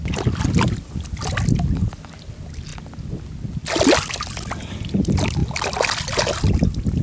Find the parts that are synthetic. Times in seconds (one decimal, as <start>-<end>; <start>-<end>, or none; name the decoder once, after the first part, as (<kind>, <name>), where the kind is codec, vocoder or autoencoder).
none